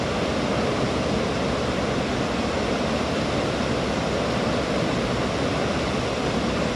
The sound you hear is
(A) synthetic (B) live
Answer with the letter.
B